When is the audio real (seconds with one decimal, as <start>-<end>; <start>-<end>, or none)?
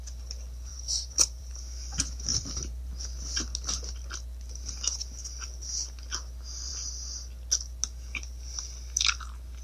0.0-0.7; 1.5-2.3; 2.9-9.6